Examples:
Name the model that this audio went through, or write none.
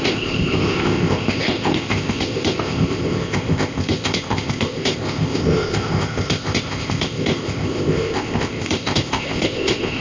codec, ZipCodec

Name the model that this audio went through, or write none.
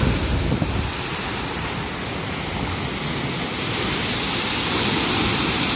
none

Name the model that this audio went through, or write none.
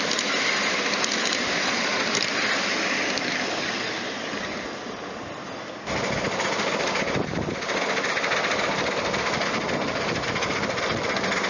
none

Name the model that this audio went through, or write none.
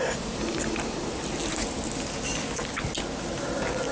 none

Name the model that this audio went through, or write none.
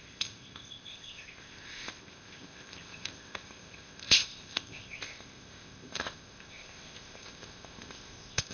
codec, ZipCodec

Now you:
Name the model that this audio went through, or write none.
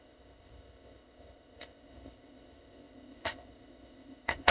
codec, ZipCodec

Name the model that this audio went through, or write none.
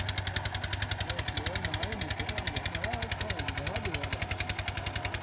none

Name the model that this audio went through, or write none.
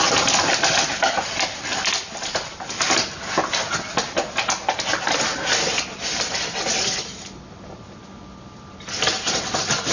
none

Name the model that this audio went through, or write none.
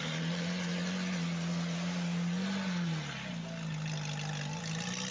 none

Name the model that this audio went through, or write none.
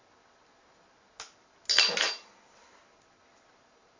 none